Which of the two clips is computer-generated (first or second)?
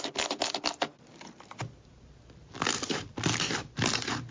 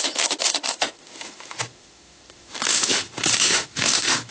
second